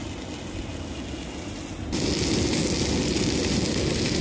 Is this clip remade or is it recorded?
recorded